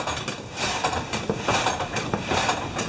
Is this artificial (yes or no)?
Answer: yes